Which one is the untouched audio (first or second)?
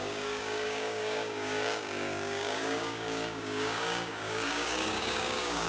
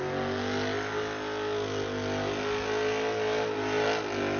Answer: second